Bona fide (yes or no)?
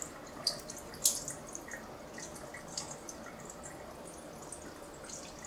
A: yes